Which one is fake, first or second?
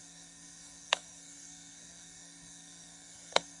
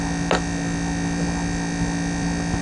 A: first